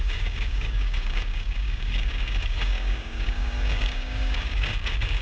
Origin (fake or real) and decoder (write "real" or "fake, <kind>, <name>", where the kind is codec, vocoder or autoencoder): fake, codec, DAC